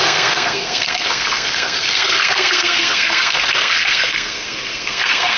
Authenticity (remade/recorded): remade